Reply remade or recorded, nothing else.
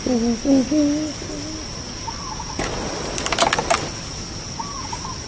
recorded